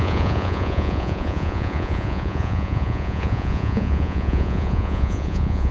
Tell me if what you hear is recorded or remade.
remade